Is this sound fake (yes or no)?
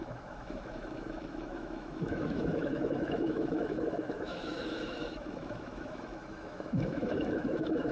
yes